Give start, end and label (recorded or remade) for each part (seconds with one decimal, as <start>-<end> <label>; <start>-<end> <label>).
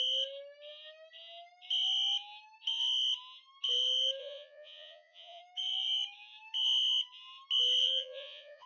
0.0-4.2 recorded; 4.2-5.4 remade; 5.4-7.8 recorded; 7.8-8.7 remade